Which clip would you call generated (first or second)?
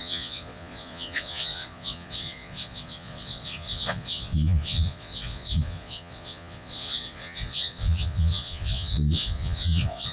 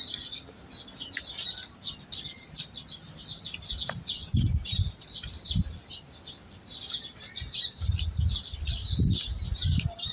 first